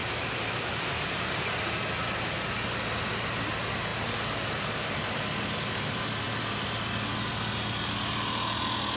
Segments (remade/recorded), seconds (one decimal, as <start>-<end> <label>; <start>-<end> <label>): 0.0-1.6 remade; 1.6-9.0 recorded